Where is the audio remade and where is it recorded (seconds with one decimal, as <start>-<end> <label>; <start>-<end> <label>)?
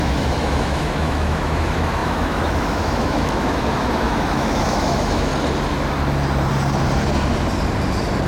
0.0-5.3 remade; 5.3-8.3 recorded